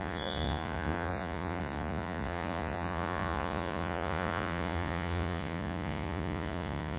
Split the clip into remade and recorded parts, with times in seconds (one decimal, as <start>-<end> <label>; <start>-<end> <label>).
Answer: 0.0-7.0 remade